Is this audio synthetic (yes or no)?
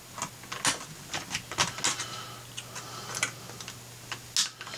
no